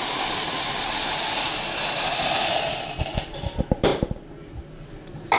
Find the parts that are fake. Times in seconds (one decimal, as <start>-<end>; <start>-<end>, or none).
none